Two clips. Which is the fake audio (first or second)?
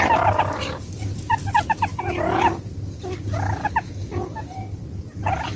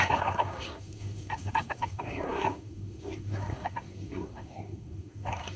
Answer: second